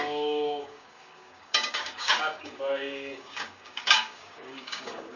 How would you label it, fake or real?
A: fake